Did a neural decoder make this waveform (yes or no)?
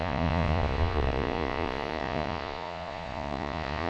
yes